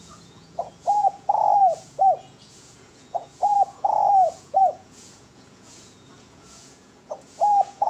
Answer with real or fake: fake